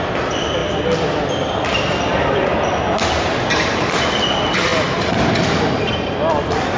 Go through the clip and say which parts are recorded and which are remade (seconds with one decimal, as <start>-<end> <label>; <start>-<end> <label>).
0.0-0.6 remade; 0.6-4.3 recorded; 4.3-6.8 remade